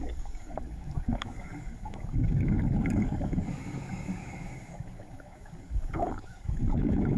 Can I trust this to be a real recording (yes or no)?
no